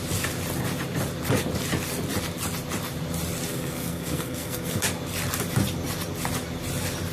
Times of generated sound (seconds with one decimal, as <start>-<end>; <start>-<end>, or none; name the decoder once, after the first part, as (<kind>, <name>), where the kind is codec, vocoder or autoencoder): 3.5-4.8 (codec, SNAC)